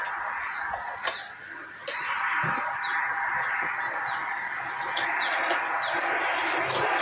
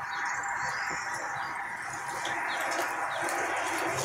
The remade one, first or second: second